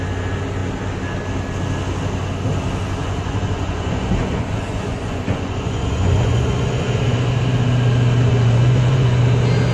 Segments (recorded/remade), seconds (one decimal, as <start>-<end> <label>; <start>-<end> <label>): 0.0-3.0 recorded; 3.0-7.3 remade; 7.3-8.3 recorded; 8.3-9.2 remade; 9.2-9.7 recorded